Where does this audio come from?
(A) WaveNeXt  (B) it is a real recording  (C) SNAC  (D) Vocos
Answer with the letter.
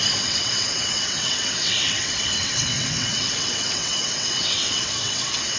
A